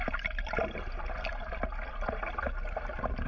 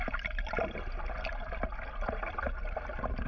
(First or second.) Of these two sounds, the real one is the first